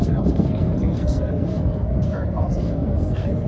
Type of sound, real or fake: fake